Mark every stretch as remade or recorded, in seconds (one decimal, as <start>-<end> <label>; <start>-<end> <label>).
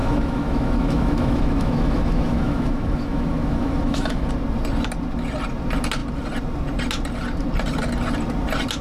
0.0-4.3 remade; 4.3-8.8 recorded